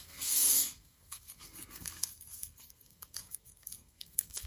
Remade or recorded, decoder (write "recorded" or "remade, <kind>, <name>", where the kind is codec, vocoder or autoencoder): remade, codec, SNAC